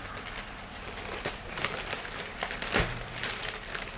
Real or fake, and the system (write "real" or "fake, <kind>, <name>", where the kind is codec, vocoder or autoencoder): fake, vocoder, BigVGAN v2